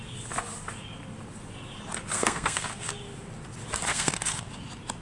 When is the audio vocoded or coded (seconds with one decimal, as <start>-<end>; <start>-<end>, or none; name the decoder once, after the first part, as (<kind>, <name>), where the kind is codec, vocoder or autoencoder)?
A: 2.1-2.9 (codec, SNAC); 3.9-4.5